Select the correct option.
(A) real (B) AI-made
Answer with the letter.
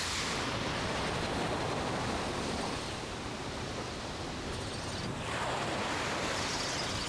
A